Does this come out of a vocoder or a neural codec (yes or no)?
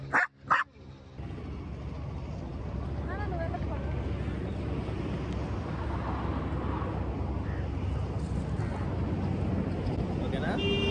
no